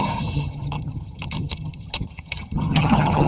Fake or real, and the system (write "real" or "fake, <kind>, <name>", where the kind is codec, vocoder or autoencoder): fake, vocoder, HiFi-GAN